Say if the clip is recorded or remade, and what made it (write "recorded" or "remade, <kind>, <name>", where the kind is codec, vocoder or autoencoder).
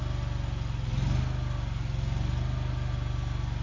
recorded